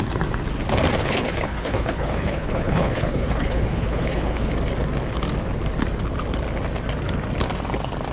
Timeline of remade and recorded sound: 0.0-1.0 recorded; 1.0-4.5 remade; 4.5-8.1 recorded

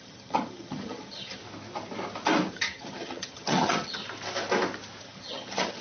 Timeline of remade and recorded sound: 0.0-1.4 remade; 1.4-2.5 recorded; 2.5-4.0 remade; 4.0-5.0 recorded; 5.0-5.8 remade

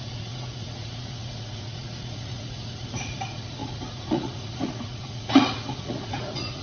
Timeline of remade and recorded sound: 0.0-6.6 remade

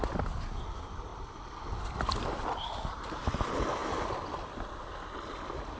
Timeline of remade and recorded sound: 0.0-5.8 recorded

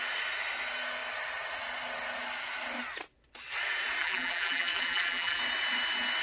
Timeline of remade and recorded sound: 0.0-4.0 recorded; 4.0-5.4 remade; 5.4-6.2 recorded

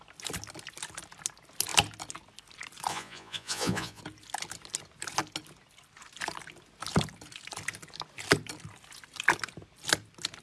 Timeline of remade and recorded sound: 0.0-2.9 recorded; 2.9-4.0 remade; 4.0-10.4 recorded